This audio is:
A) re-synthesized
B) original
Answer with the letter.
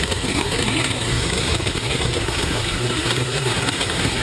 A